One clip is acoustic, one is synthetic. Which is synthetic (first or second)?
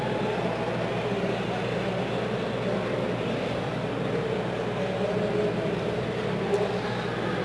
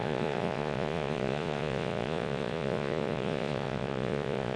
second